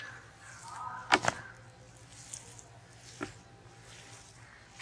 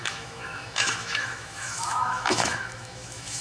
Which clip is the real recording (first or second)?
first